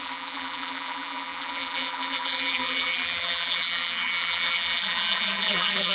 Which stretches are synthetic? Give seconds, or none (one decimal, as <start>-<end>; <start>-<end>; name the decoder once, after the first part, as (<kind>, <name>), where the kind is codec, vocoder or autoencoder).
0.0-5.9 (vocoder, BigVGAN v2)